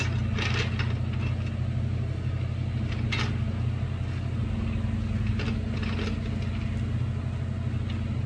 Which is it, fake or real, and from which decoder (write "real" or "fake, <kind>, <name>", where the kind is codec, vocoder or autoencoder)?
real